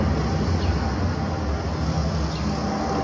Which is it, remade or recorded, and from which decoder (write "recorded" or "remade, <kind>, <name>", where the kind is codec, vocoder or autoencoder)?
recorded